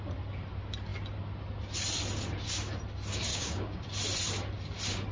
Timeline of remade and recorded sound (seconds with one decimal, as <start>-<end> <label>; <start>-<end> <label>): 0.0-3.3 recorded; 3.3-3.8 remade; 3.8-5.1 recorded